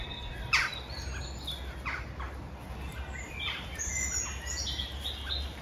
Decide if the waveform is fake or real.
real